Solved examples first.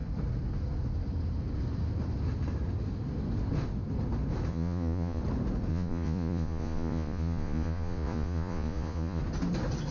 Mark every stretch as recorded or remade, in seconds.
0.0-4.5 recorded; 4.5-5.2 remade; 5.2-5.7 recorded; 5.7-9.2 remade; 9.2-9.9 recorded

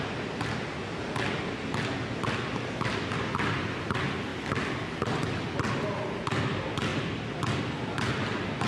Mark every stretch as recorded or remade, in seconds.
0.0-8.7 recorded